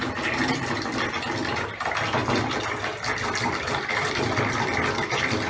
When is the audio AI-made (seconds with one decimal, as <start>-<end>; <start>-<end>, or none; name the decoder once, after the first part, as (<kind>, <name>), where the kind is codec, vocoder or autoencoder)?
2.2-4.1 (vocoder, BigVGAN v2)